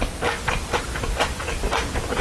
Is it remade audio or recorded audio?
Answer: recorded